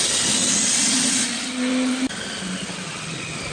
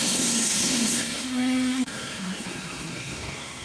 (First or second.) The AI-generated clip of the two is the second